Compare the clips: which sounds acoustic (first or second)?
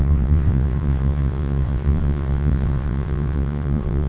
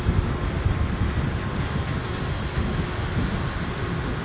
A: second